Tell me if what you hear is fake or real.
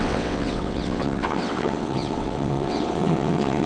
fake